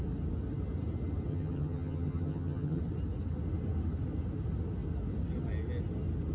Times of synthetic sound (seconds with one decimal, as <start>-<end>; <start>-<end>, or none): 1.3-2.8